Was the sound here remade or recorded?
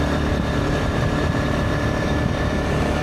remade